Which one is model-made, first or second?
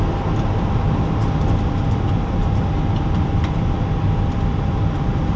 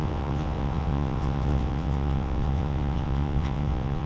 second